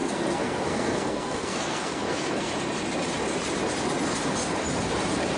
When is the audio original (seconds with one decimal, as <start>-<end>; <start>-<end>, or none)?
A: 2.5-5.4